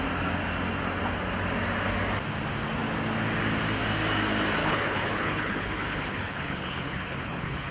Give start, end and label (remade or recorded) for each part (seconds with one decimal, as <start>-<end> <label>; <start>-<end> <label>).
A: 0.0-4.6 recorded; 4.6-7.7 remade